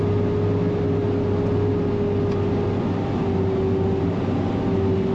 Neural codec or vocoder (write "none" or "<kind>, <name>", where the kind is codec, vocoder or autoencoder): none